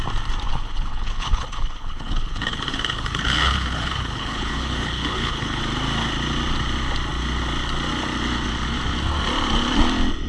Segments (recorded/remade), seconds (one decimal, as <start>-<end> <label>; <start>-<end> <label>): 0.0-0.5 recorded; 0.5-5.6 remade; 5.6-10.3 recorded